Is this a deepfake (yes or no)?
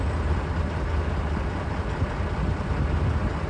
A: no